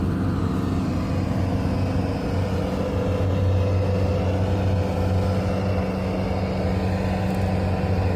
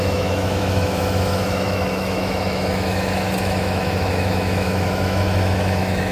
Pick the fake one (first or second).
second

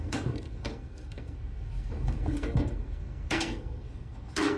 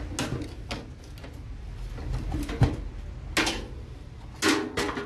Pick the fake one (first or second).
first